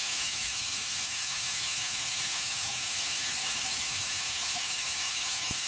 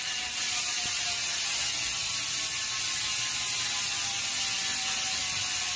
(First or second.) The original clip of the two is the second